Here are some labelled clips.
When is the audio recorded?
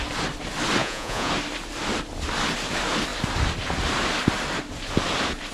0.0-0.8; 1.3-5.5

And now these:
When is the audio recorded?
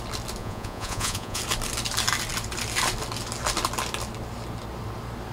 0.0-0.4; 1.4-5.3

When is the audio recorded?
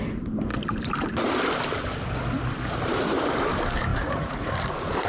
0.0-3.9; 4.5-5.1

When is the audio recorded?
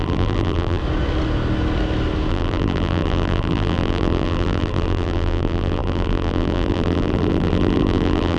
0.8-2.3